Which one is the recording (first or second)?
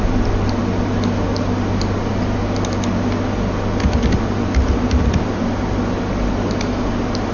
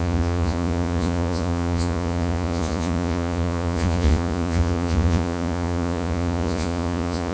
first